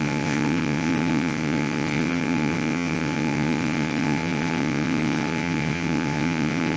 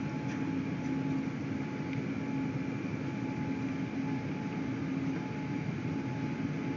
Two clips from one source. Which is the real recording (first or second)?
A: second